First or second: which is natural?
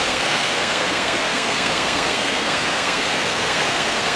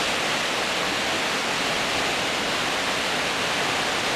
second